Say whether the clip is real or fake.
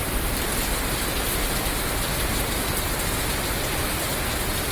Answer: real